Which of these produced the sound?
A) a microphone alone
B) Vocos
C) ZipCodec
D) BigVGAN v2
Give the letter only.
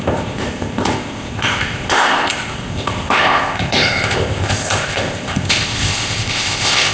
C